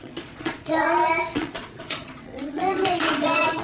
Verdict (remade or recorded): remade